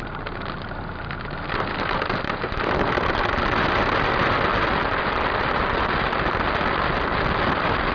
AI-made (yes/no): no